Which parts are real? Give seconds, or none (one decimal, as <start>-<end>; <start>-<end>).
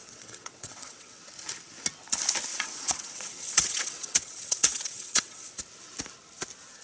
1.2-2.5; 5.6-6.8